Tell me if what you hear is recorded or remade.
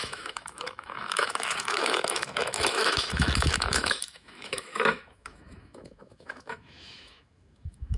remade